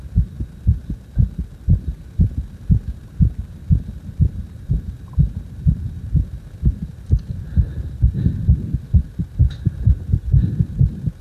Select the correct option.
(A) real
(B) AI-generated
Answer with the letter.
A